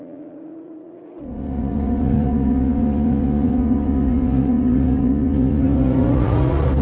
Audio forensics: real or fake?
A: fake